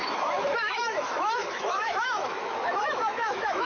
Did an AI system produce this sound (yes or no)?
yes